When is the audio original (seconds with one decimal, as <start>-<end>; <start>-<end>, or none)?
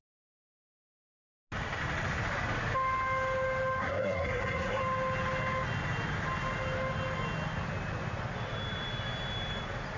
0.0-3.8; 4.8-10.0